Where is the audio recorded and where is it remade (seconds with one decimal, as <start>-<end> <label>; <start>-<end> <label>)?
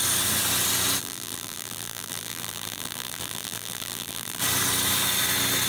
0.0-1.0 recorded; 1.0-4.4 remade; 4.4-5.7 recorded